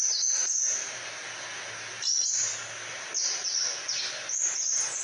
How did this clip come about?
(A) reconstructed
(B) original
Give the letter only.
B